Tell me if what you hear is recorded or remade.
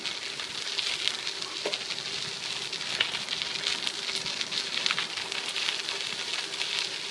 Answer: recorded